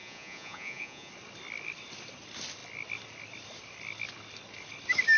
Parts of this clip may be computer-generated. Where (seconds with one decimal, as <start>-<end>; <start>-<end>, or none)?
0.0-1.1